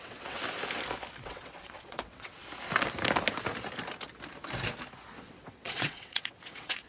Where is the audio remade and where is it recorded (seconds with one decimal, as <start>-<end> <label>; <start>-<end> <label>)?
0.0-0.4 remade; 0.4-1.2 recorded; 1.2-2.4 remade; 2.4-5.2 recorded; 5.2-6.9 remade